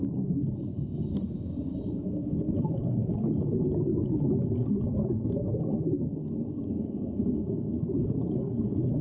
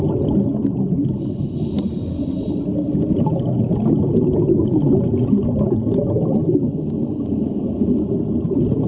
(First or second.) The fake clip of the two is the first